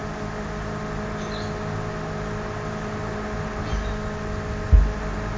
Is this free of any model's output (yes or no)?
yes